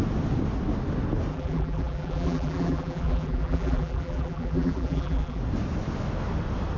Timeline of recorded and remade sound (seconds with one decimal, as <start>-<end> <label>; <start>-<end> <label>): 0.0-1.3 recorded; 1.3-5.4 remade; 5.4-6.8 recorded